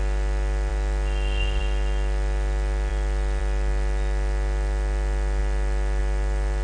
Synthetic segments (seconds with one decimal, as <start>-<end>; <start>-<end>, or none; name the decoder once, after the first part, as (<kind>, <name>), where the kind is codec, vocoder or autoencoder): none